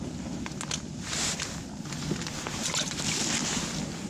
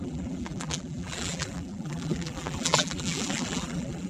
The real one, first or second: first